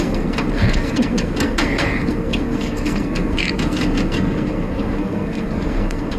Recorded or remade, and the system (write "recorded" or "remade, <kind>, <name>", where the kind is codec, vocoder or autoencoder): remade, codec, SNAC